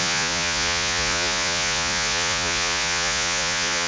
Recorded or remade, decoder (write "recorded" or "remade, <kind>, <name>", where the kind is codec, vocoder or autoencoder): remade, vocoder, Vocos